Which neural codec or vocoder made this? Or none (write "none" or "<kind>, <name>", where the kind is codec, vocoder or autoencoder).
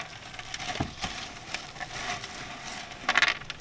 none